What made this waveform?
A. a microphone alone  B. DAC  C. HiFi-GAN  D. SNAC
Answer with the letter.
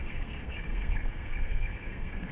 D